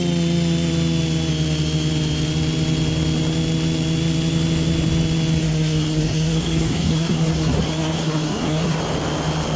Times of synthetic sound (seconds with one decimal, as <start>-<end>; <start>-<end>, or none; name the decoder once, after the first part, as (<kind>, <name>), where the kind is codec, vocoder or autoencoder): 5.4-8.8 (codec, SNAC)